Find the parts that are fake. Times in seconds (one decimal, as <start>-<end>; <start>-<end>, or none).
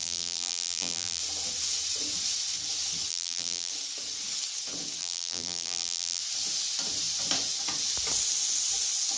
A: 0.0-1.2; 3.1-3.7; 5.0-6.2